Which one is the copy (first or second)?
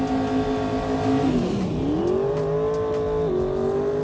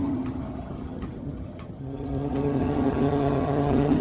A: second